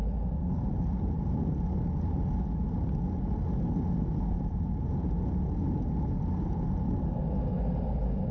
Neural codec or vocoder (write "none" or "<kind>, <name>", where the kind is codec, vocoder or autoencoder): none